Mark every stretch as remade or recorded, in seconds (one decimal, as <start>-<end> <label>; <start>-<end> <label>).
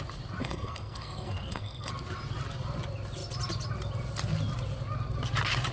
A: 0.0-0.4 recorded; 0.4-1.9 remade; 1.9-5.7 recorded